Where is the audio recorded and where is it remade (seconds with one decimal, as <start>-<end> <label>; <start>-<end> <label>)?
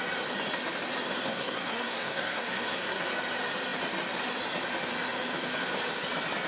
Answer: 0.0-1.3 recorded; 1.3-3.1 remade; 3.1-6.5 recorded